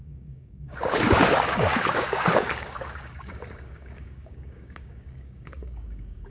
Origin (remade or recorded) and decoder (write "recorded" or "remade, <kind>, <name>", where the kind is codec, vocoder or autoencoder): remade, codec, DAC